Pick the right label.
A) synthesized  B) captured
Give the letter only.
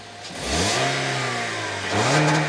B